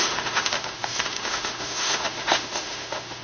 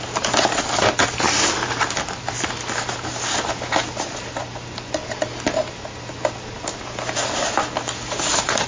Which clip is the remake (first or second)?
first